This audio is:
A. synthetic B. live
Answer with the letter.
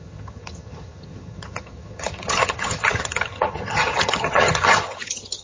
A